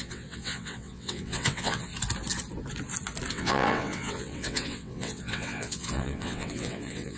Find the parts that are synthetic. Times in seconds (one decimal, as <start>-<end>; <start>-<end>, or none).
0.0-1.9; 3.3-7.2